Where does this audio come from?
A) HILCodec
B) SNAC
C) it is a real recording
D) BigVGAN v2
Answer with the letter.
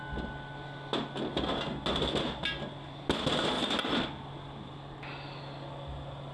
C